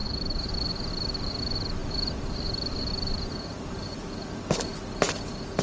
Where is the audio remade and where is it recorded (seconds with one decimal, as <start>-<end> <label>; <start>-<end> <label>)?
0.0-0.5 remade; 0.5-1.8 recorded; 1.8-3.9 remade; 3.9-5.6 recorded